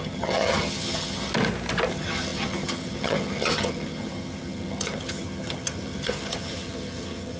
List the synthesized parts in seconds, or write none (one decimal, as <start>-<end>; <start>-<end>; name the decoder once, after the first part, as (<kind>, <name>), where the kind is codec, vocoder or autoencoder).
0.0-1.3 (vocoder, HiFi-GAN); 1.9-7.4